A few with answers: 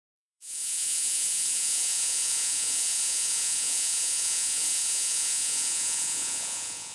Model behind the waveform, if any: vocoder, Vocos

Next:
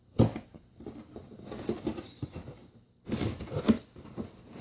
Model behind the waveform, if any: none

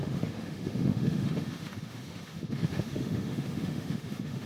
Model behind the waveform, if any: autoencoder, DAC-VAE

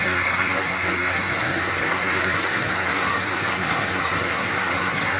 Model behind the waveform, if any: codec, SNAC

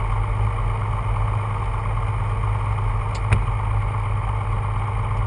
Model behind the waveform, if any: none